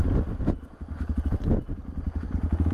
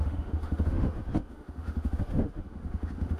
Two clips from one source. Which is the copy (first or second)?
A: second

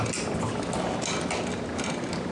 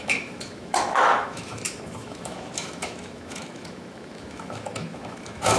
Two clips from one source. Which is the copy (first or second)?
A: second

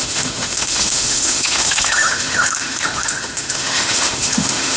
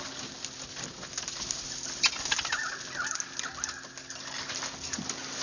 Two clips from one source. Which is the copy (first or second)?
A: first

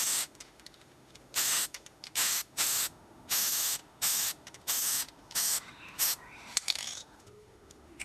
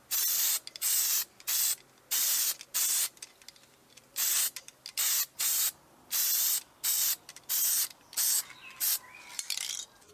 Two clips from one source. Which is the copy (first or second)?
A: first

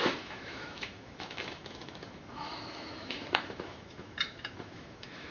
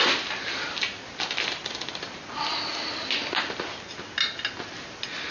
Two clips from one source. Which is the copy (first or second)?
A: first